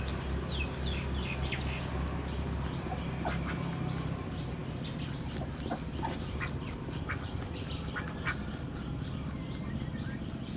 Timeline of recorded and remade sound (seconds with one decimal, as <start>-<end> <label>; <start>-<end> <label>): 0.0-10.6 recorded